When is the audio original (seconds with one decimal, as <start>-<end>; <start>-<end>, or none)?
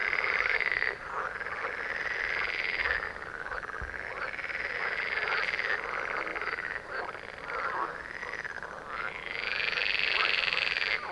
1.1-11.1